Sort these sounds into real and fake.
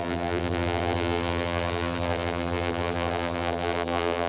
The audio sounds fake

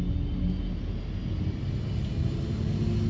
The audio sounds real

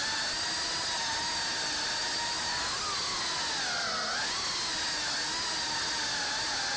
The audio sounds real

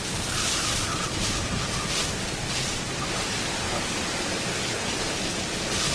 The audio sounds real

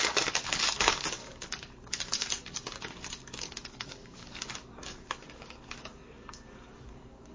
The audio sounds fake